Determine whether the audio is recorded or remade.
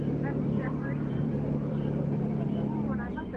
remade